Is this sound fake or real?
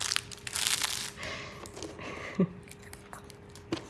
real